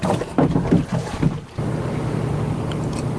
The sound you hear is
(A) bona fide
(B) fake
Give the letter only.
B